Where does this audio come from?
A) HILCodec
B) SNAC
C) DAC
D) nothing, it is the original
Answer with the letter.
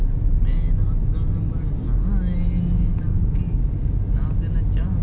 D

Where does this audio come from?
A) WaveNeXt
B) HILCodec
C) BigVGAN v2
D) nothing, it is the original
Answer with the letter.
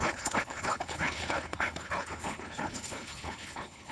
B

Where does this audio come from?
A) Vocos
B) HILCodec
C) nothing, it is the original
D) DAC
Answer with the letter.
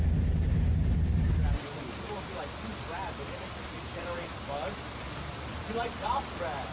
C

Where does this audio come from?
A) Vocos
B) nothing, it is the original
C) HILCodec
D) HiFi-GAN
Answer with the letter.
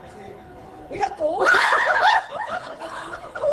C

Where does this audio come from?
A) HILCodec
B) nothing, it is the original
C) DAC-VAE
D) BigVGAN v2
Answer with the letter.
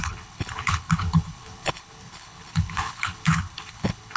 A